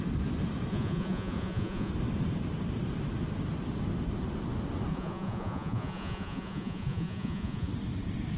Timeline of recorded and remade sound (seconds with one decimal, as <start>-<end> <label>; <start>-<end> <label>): 0.0-0.7 recorded; 0.7-1.9 remade; 1.9-4.9 recorded; 4.9-7.7 remade; 7.7-8.4 recorded